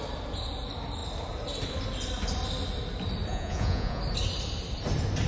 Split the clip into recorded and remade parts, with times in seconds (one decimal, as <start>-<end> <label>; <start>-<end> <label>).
0.0-3.3 recorded; 3.3-4.0 remade; 4.0-5.3 recorded

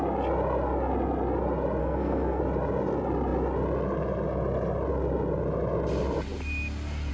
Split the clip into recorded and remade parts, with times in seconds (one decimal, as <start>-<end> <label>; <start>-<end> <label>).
0.0-1.8 recorded; 1.8-2.4 remade; 2.4-7.1 recorded

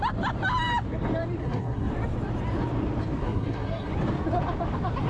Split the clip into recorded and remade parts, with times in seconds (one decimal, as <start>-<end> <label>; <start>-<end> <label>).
0.0-1.4 recorded; 1.4-1.9 remade; 1.9-3.2 recorded; 3.2-3.9 remade; 3.9-5.1 recorded